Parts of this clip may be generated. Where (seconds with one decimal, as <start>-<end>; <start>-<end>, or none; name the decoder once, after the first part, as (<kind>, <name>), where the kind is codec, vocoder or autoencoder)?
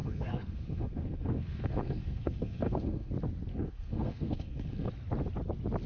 0.0-3.1 (codec, SNAC); 3.5-4.9